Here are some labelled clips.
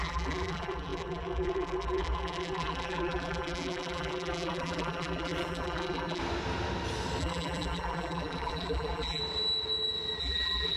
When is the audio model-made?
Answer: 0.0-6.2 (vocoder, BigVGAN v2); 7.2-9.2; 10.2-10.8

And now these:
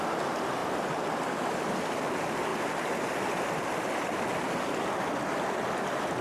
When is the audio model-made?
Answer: none

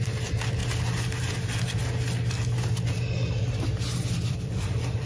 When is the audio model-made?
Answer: 0.0-0.6 (vocoder, BigVGAN v2); 1.2-1.8; 4.0-5.1

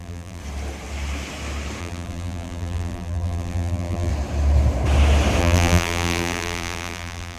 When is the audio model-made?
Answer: 0.0-0.4 (vocoder, BigVGAN v2); 1.8-4.1; 5.4-7.4